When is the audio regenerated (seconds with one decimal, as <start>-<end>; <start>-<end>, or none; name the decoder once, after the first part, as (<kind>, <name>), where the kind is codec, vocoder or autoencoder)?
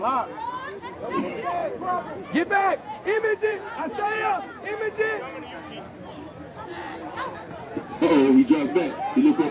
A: 1.6-4.5 (vocoder, Vocos)